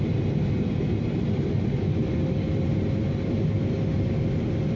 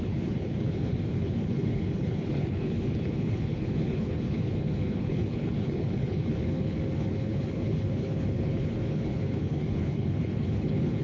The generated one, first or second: second